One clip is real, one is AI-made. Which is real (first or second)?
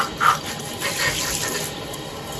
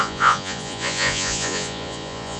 first